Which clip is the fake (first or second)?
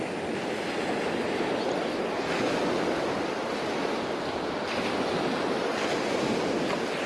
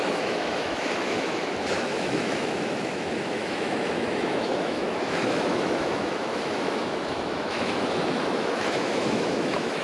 second